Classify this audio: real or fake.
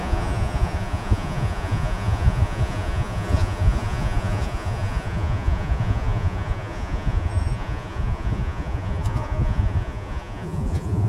fake